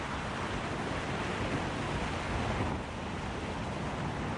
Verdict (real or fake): real